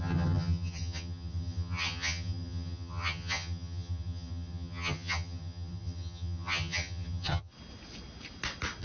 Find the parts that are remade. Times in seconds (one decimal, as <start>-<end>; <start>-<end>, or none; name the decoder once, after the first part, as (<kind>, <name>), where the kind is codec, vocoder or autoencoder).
0.0-7.5 (vocoder, HiFi-GAN)